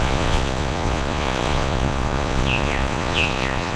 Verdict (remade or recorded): remade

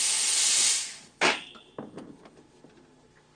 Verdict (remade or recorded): recorded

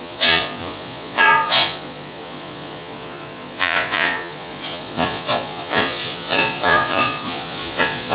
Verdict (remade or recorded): remade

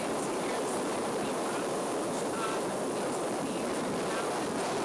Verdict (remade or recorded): recorded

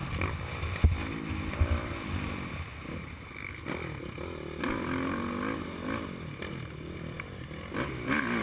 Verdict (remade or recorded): recorded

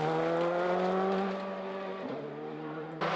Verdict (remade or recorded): recorded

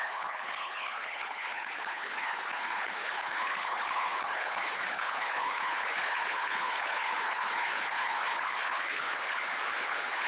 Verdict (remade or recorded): remade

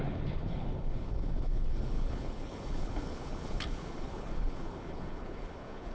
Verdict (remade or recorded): remade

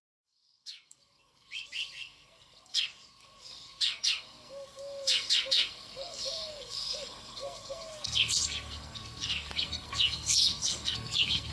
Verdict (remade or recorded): remade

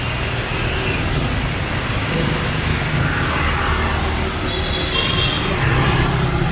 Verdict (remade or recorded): recorded